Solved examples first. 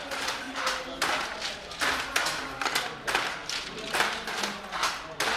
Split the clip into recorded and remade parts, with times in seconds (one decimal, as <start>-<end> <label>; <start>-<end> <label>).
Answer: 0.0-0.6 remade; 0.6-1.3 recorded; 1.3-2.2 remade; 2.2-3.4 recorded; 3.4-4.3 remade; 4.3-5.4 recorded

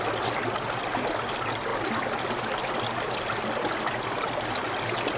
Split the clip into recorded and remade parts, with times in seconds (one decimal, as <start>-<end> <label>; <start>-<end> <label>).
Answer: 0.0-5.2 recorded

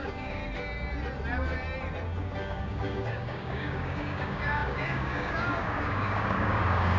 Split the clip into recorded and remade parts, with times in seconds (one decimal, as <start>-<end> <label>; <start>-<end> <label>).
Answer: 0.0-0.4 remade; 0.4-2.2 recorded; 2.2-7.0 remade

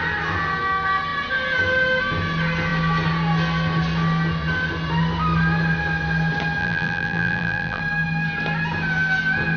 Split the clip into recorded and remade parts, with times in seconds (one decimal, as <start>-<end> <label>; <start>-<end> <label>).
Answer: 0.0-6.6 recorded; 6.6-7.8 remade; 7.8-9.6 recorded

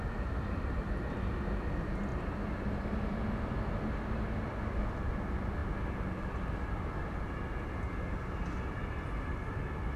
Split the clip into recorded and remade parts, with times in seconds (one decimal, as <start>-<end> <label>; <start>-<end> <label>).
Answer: 0.0-10.0 recorded